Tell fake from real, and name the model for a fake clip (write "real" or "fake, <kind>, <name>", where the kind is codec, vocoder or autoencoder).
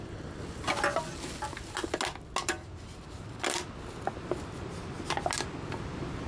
real